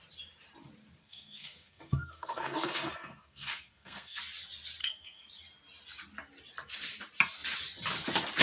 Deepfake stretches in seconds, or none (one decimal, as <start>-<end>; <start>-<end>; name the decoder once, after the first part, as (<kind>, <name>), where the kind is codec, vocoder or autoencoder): 1.0-4.2 (codec, SNAC); 4.8-5.3